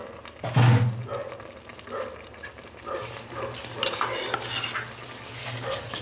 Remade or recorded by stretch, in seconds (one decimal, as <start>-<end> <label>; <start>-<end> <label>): 0.0-5.4 recorded; 5.4-6.0 remade